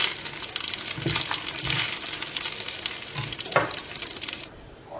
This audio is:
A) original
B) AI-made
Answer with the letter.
A